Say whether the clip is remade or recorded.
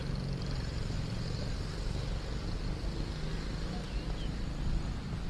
recorded